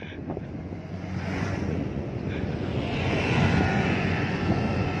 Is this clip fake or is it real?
fake